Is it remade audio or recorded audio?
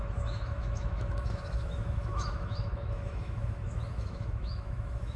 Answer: remade